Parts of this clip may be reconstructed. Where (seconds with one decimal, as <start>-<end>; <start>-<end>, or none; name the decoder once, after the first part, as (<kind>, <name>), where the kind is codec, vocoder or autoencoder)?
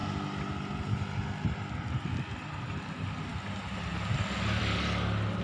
none